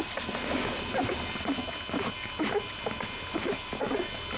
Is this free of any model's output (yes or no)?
yes